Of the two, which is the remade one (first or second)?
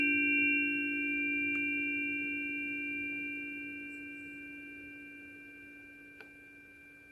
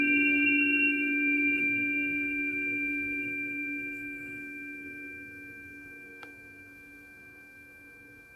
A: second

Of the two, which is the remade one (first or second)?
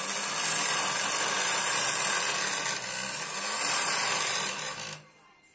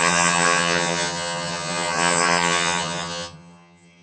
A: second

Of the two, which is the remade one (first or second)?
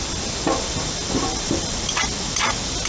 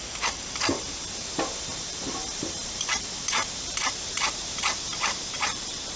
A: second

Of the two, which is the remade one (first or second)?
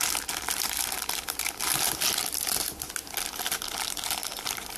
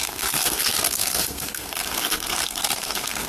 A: second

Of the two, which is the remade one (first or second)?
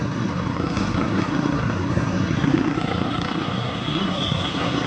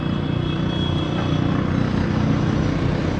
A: first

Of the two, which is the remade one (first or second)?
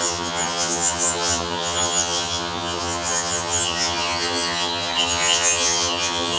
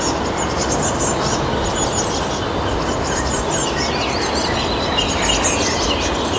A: first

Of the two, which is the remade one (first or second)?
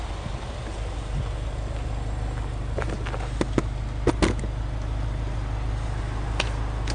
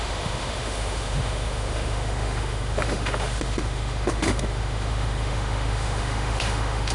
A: second